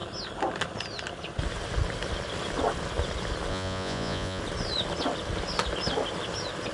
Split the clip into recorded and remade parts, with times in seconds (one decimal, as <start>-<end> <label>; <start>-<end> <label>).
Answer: 0.0-3.5 recorded; 3.5-4.4 remade; 4.4-6.7 recorded